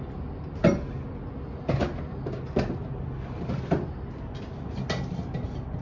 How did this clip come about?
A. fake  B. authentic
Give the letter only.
B